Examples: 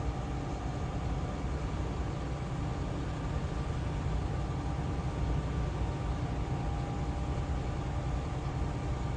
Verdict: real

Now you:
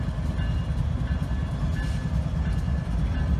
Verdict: real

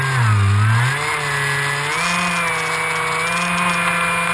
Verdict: real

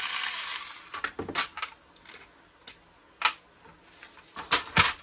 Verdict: real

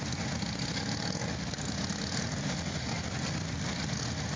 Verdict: real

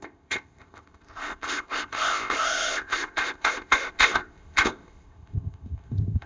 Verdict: fake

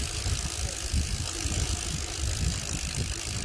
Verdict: real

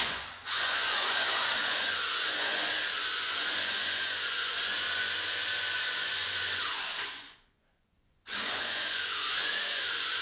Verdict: fake